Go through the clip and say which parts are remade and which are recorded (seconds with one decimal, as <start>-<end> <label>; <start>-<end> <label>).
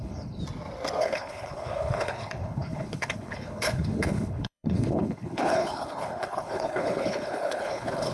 0.0-0.4 remade; 0.4-1.0 recorded; 1.0-8.1 remade